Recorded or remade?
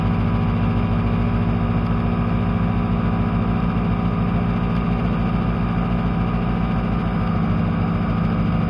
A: recorded